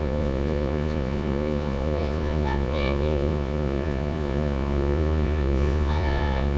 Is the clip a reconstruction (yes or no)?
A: yes